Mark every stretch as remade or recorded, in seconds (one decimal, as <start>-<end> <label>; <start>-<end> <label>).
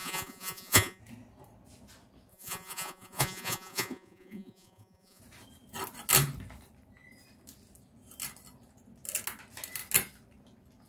0.0-1.0 remade; 1.0-2.3 recorded; 2.3-5.2 remade; 5.2-10.9 recorded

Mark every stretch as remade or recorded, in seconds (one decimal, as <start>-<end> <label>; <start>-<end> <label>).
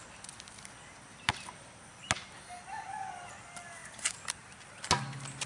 0.0-3.8 recorded; 3.8-4.5 remade; 4.5-5.5 recorded